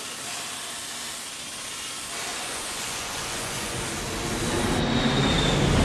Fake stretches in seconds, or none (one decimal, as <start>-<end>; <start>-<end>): 2.3-3.8